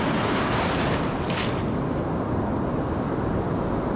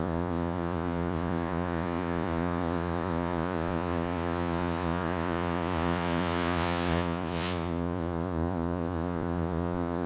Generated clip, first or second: second